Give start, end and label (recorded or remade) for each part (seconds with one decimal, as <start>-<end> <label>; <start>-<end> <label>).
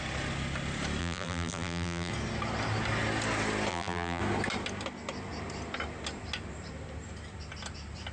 0.0-1.0 recorded; 1.0-2.1 remade; 2.1-3.7 recorded; 3.7-4.2 remade; 4.2-8.1 recorded